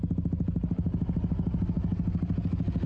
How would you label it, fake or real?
real